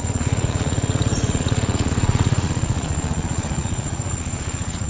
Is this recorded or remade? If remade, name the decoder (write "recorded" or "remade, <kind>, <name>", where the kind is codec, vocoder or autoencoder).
remade, vocoder, Vocos